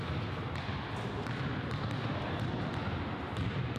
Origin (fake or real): fake